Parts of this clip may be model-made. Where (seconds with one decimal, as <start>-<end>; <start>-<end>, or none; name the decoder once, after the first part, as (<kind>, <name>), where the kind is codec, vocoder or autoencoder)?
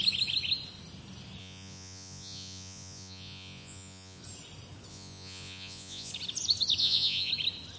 1.4-4.2 (vocoder, Vocos); 4.9-6.1; 6.8-7.3